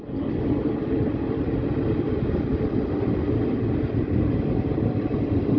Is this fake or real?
real